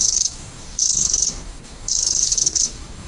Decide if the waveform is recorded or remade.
remade